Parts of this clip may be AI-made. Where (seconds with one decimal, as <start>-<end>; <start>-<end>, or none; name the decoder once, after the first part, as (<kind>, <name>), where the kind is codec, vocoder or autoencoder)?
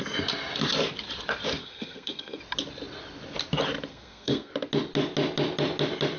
1.6-2.4 (codec, SNAC); 3.9-4.5